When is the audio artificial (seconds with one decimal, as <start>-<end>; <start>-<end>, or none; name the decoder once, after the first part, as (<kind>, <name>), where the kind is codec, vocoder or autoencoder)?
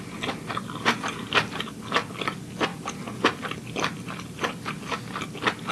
none